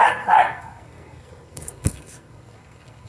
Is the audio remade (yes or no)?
yes